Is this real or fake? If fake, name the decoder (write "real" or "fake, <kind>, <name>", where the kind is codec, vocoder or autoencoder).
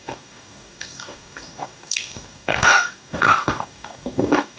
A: fake, codec, DAC